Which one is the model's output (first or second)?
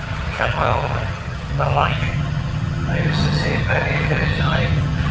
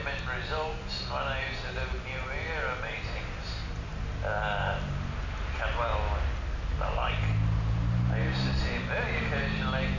first